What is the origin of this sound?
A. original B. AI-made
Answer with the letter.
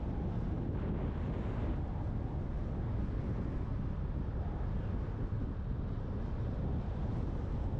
A